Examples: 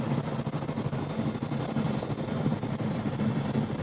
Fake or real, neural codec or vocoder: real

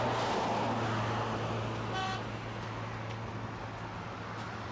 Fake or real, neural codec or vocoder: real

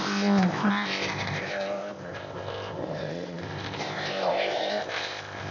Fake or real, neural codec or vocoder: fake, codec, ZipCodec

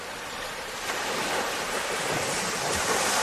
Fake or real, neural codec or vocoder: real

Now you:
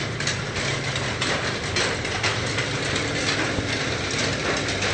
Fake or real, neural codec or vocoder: real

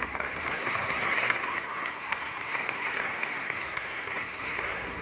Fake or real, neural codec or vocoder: fake, codec, SNAC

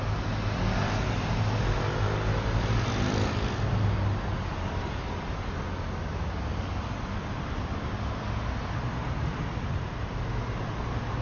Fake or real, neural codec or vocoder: real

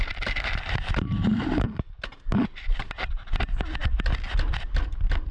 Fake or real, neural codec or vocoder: real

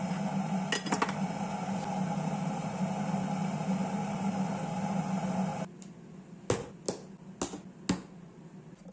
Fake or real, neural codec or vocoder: real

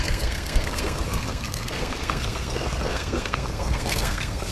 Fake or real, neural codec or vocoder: fake, codec, SNAC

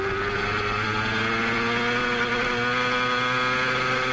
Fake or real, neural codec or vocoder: real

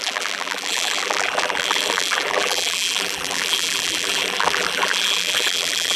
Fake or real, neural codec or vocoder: fake, vocoder, BigVGAN v2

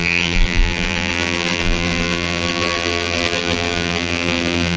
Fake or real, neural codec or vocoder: fake, vocoder, BigVGAN v2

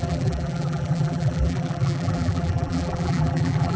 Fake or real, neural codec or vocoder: fake, vocoder, BigVGAN v2